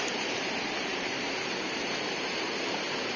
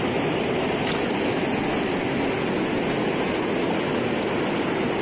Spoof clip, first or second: first